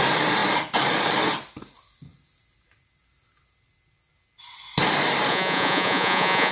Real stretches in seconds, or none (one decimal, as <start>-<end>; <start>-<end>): 0.0-5.3